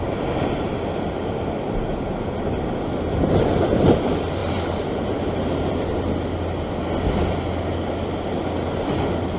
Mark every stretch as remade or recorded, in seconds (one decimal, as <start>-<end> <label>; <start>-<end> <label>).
0.0-9.4 recorded